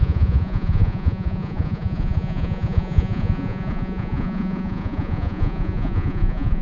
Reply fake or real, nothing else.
fake